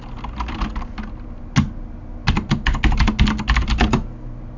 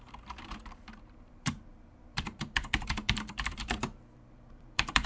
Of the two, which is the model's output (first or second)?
second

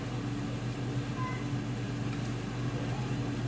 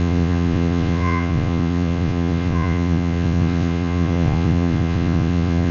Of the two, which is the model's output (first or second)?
second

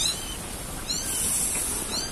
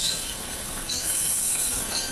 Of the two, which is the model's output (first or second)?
second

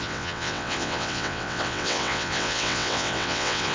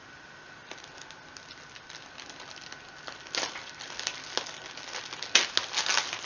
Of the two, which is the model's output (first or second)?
first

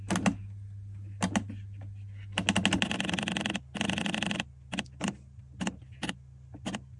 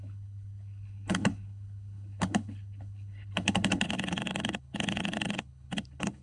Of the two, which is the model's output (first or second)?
second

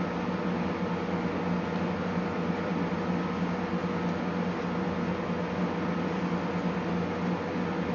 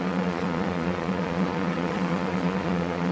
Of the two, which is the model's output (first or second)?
second